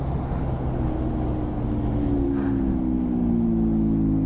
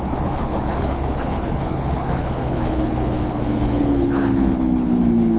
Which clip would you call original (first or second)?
first